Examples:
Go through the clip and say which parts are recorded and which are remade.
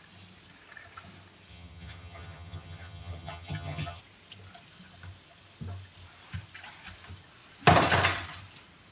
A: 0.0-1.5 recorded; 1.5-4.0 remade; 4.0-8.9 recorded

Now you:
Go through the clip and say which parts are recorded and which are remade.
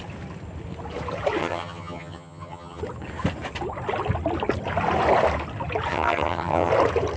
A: 0.0-1.4 recorded; 1.4-2.8 remade; 2.8-5.9 recorded; 5.9-6.7 remade; 6.7-7.2 recorded